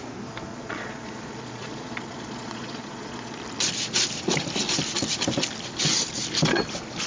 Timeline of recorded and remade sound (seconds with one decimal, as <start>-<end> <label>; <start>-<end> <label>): 0.0-0.5 recorded; 0.5-3.4 remade; 3.4-7.1 recorded